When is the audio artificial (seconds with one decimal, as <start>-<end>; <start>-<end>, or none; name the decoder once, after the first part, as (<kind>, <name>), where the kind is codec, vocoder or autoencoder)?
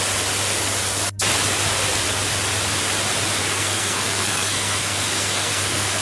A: 3.4-6.0 (codec, SNAC)